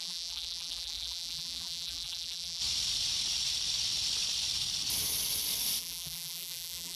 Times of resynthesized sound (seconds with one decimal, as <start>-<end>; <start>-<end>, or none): 0.0-2.6; 5.8-7.0